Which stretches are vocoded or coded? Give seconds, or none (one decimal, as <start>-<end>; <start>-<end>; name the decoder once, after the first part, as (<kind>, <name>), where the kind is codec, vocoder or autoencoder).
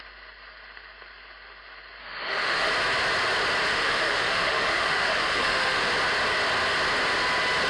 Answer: 2.0-2.7 (autoencoder, DAC-VAE); 3.7-5.9